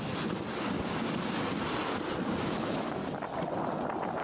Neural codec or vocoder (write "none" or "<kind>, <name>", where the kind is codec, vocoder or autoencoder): none